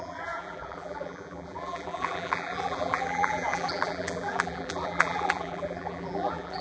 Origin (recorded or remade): remade